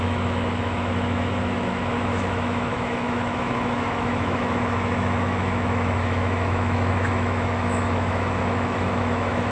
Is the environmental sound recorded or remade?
remade